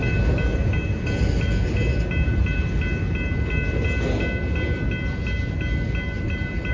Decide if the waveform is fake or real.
real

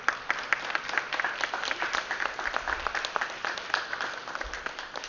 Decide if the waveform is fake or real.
real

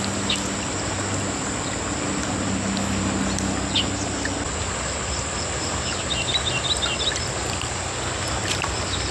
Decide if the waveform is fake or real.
real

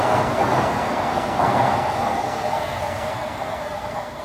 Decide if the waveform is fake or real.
fake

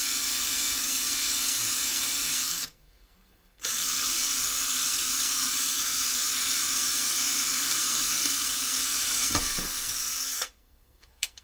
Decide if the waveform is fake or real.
fake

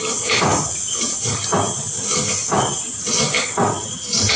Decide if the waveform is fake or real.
real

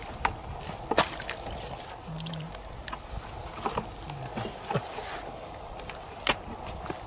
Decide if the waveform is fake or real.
real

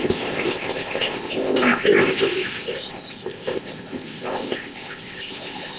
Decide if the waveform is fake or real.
fake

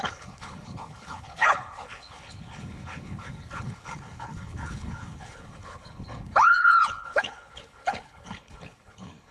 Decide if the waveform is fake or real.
fake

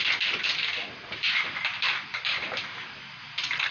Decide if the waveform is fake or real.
real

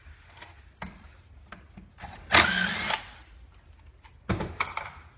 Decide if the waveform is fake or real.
real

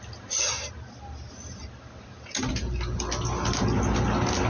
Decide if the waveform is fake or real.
real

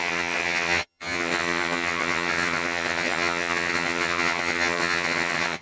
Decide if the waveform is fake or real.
fake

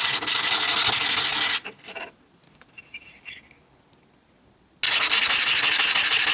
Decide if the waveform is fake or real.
real